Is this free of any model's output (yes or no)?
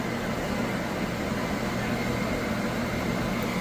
yes